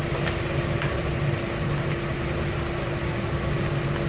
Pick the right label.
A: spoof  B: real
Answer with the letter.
B